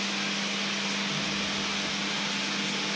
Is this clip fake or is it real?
real